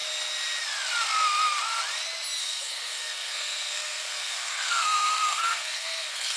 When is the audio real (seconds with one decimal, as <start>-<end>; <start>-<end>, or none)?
0.0-2.4